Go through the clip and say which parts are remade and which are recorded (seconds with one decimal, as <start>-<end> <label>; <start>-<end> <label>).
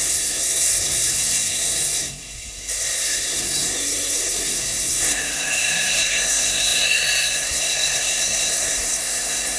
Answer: 0.0-9.6 remade